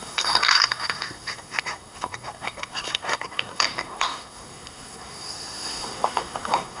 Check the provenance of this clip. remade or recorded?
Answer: remade